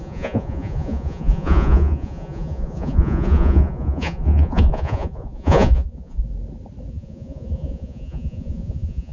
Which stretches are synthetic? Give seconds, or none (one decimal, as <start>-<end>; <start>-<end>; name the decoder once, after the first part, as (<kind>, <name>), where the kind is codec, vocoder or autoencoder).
0.0-6.3 (vocoder, Vocos); 6.9-9.1